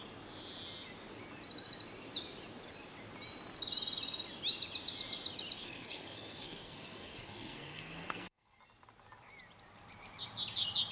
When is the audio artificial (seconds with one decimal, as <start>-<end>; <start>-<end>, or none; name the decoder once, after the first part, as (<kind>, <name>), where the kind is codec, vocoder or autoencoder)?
5.6-8.6 (codec, SNAC)